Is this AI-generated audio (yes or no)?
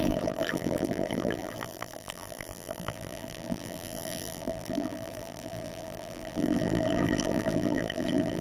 yes